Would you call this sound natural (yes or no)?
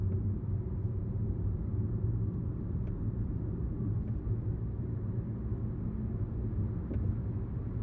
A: yes